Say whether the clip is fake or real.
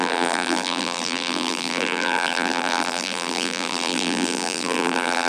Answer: fake